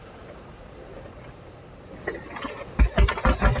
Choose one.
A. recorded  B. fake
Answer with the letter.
A